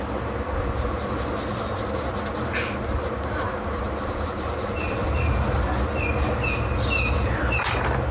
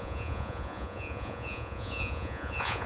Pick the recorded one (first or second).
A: first